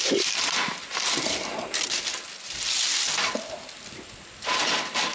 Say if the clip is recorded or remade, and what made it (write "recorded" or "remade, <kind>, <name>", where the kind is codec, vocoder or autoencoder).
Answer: recorded